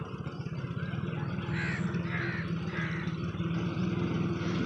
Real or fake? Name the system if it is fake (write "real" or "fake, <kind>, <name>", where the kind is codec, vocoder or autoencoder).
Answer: real